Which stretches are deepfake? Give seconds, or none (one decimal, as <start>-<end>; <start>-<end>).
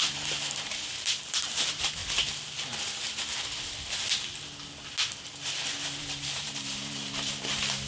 0.0-2.0; 6.0-7.9